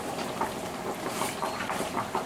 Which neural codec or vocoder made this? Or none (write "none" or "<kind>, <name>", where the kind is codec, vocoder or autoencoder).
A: vocoder, BigVGAN v2